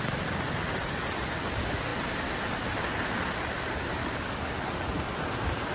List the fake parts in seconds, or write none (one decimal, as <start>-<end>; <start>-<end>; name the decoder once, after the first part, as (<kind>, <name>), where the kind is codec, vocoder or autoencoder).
4.0-4.5 (codec, DAC)